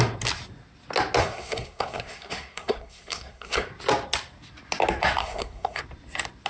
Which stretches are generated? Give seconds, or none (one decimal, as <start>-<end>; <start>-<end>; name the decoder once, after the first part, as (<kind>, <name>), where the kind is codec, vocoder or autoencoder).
1.2-3.7 (codec, SNAC); 5.2-5.8